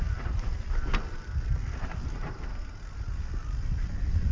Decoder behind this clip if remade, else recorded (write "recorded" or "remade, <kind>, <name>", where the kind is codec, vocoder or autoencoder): recorded